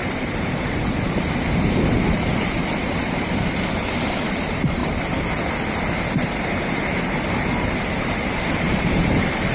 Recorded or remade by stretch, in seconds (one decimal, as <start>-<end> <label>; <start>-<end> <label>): 0.0-4.8 remade; 4.8-6.3 recorded; 6.3-9.5 remade